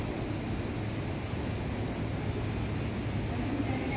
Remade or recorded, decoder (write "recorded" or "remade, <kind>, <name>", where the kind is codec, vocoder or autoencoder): recorded